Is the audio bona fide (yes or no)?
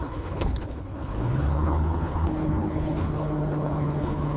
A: no